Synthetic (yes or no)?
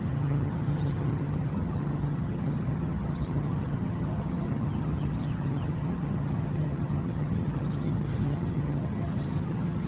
yes